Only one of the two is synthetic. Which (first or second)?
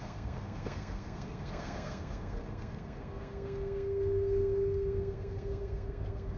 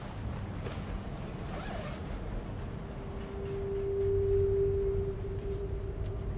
first